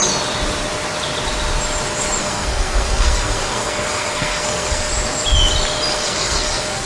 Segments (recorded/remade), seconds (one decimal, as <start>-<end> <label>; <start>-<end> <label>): 0.0-2.2 recorded; 2.2-4.9 remade; 4.9-5.9 recorded; 5.9-6.9 remade